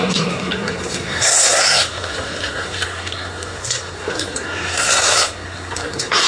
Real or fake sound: fake